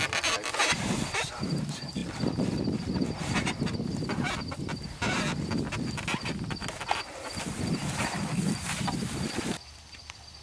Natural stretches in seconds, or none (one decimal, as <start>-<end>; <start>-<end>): 0.0-10.4